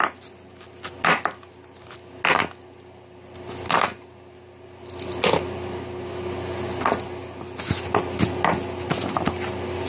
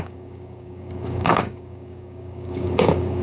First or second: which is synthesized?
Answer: second